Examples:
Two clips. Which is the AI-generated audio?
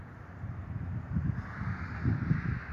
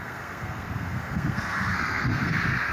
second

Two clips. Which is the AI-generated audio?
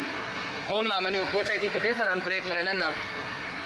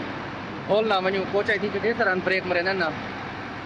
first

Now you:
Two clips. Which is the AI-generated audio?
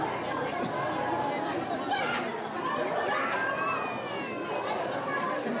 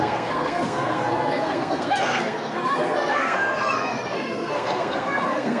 second